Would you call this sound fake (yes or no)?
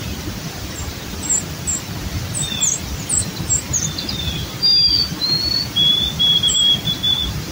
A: no